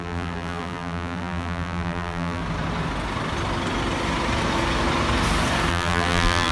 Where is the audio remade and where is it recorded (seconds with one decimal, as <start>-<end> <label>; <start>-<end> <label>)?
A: 0.0-2.4 remade; 2.4-5.7 recorded; 5.7-6.5 remade